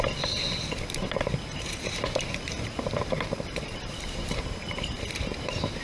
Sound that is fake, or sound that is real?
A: fake